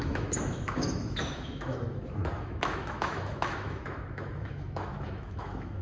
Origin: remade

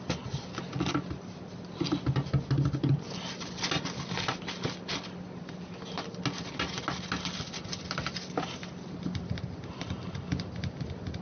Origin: recorded